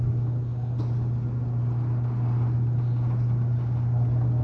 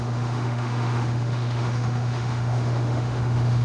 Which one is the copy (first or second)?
second